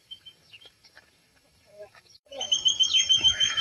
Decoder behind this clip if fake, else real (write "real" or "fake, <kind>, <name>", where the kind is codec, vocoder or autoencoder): fake, autoencoder, DAC-VAE